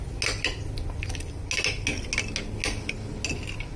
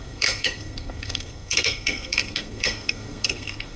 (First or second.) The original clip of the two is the first